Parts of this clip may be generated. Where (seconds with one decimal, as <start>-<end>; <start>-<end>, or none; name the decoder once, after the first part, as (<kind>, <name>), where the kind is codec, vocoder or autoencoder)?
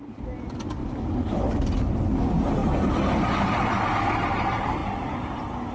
4.8-5.7 (vocoder, BigVGAN v2)